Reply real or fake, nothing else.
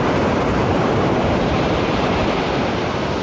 fake